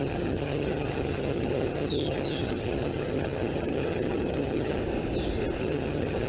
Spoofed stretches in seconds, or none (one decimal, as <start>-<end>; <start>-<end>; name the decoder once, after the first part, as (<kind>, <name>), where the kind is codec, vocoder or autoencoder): 0.0-4.8 (vocoder, HiFi-GAN); 5.6-6.3